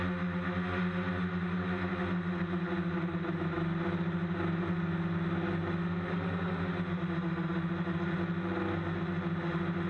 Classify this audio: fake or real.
real